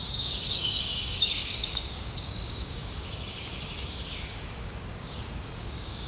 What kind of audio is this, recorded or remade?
remade